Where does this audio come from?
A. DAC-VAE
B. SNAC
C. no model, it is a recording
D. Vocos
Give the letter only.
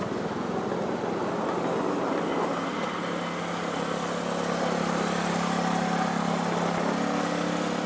C